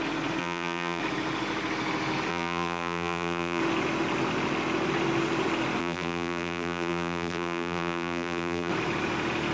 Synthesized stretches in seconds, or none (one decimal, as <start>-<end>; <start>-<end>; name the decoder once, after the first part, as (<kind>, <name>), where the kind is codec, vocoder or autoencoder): 0.4-1.0 (vocoder, BigVGAN v2); 2.3-3.6; 5.8-8.7